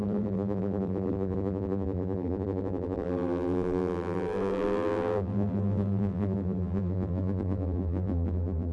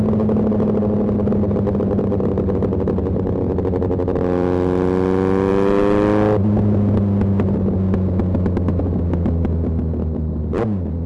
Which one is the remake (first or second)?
first